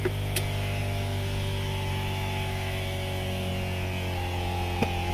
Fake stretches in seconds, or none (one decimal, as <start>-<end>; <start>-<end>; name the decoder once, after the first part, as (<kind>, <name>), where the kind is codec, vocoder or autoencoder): 0.0-3.5 (autoencoder, DAC-VAE)